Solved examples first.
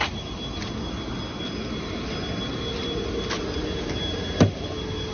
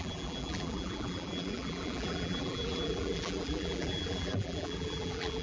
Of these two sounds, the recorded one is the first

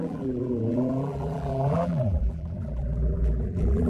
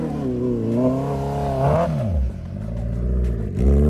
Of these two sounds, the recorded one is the second